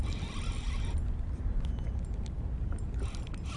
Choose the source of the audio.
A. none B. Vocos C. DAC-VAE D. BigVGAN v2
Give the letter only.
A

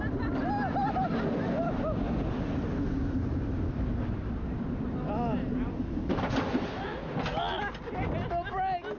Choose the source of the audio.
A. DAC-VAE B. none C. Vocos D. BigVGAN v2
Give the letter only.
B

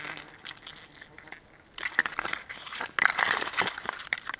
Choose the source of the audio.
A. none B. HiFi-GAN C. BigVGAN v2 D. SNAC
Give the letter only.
A